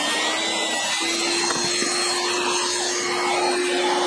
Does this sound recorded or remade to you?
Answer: recorded